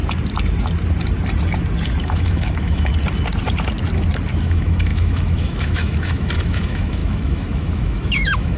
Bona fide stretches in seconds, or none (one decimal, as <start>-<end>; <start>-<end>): 0.0-2.0; 2.9-4.4